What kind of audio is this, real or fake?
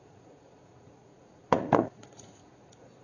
fake